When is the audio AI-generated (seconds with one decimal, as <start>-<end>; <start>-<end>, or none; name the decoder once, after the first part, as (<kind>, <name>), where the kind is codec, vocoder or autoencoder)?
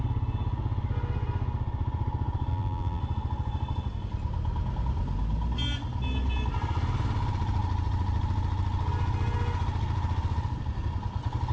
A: 2.5-3.0 (vocoder, BigVGAN v2)